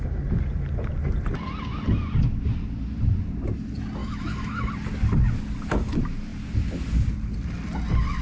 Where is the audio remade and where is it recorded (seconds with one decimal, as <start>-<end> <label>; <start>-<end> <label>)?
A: 0.0-4.0 recorded; 4.0-4.7 remade; 4.7-8.2 recorded